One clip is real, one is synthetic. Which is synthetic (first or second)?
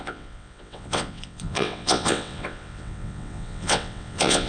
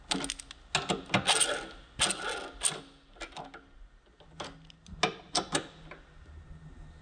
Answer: first